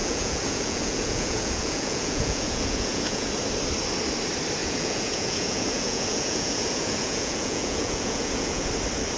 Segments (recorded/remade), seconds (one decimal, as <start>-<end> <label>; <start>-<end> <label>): 0.0-3.3 remade; 3.3-4.6 recorded; 4.6-8.7 remade; 8.7-9.2 recorded